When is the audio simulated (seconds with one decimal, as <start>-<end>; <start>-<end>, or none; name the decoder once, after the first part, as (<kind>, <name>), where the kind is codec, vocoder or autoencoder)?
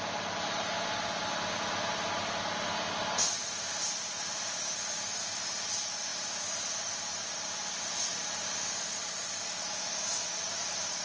9.8-10.4 (autoencoder, DAC-VAE)